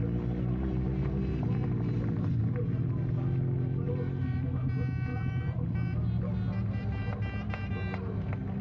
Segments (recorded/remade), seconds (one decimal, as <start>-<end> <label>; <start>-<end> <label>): 0.0-1.3 recorded; 1.3-3.9 remade; 3.9-5.1 recorded; 5.1-5.7 remade; 5.7-8.6 recorded